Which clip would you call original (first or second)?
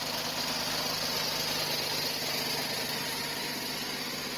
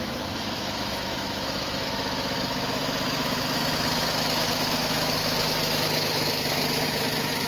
first